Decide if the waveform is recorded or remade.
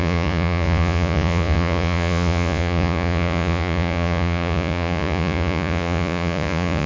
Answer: remade